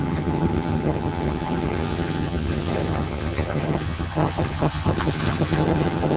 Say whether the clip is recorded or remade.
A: remade